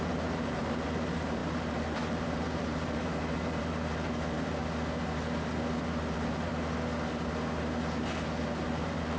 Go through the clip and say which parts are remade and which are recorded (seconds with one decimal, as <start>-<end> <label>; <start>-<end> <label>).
0.0-4.6 remade; 4.6-6.0 recorded; 6.0-6.5 remade; 6.5-8.7 recorded; 8.7-9.2 remade